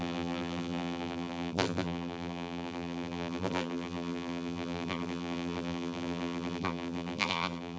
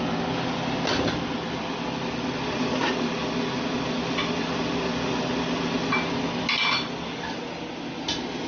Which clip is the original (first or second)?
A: second